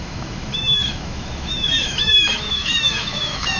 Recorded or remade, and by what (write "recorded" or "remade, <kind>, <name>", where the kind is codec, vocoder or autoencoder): remade, autoencoder, DAC-VAE